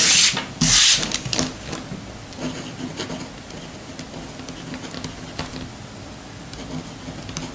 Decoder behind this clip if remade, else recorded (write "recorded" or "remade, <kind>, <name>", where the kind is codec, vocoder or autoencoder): recorded